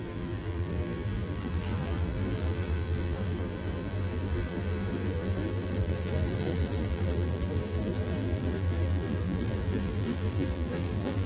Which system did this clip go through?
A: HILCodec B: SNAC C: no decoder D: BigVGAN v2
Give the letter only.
D